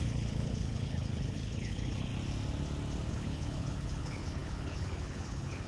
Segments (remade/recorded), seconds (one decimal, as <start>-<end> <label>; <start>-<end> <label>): 0.0-2.1 remade; 2.1-3.1 recorded; 3.1-5.7 remade